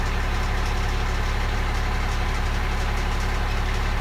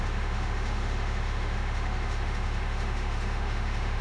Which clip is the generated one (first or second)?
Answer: second